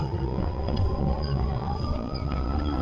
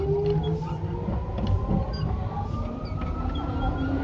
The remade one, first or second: first